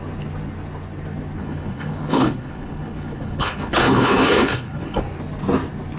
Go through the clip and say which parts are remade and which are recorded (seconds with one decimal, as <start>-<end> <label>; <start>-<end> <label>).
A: 0.0-1.4 recorded; 1.4-5.0 remade; 5.0-6.0 recorded